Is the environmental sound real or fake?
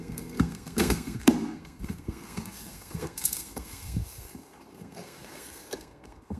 fake